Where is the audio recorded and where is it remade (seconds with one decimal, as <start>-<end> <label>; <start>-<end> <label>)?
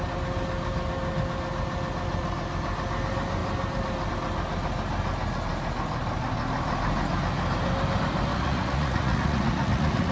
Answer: 0.0-8.3 recorded; 8.3-10.1 remade